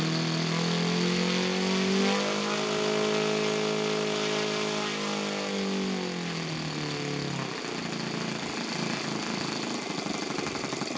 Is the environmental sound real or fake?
real